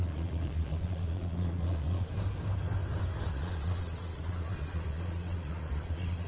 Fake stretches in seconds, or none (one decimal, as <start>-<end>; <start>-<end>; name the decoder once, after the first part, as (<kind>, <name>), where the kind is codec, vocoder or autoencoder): 0.0-2.1 (vocoder, Vocos); 3.3-6.3